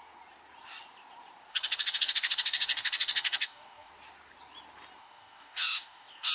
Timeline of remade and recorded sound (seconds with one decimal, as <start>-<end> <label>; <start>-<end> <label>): 0.0-1.5 recorded; 1.5-3.9 remade; 3.9-5.0 recorded; 5.0-6.3 remade